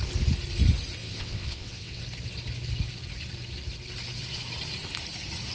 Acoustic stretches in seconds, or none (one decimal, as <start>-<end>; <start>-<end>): 0.0-1.0; 2.0-5.5